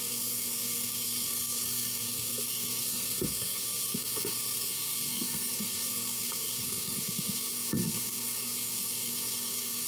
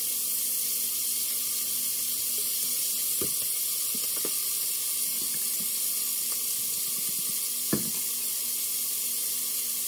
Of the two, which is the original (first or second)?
second